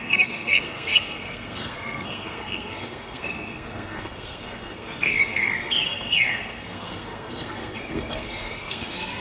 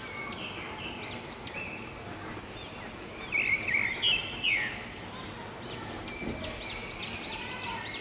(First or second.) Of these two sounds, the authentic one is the second